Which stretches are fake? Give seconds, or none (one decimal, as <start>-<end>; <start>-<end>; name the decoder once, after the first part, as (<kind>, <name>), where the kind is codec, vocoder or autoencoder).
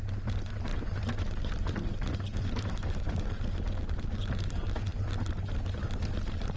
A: none